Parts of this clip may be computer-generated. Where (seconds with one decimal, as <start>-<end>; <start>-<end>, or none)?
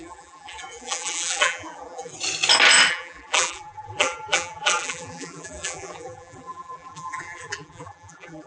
0.0-2.1; 2.9-8.5